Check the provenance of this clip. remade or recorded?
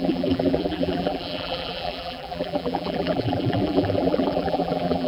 remade